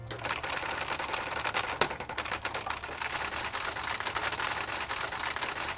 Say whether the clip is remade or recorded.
recorded